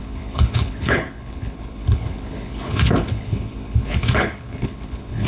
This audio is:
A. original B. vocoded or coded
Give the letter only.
B